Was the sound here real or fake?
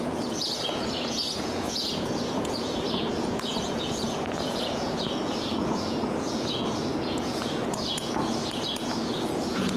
fake